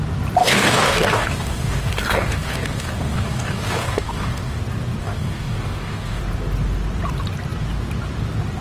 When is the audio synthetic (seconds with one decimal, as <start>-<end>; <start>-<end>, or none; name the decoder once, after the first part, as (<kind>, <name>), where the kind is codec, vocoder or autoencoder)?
0.4-4.6 (codec, DAC); 5.0-6.2